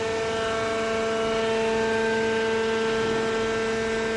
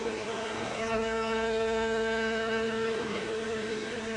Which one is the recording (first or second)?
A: first